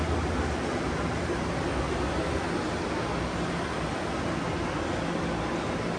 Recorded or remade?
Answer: recorded